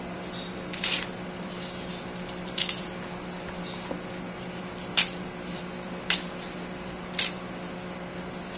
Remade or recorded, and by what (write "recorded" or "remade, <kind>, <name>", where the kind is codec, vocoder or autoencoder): recorded